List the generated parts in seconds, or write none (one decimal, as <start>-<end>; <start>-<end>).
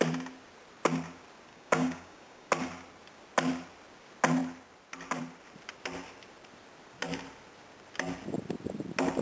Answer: 1.5-2.5